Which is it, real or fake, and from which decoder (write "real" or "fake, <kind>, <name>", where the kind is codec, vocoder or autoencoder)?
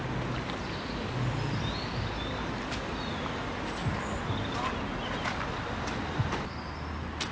real